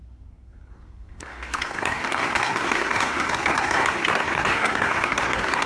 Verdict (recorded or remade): remade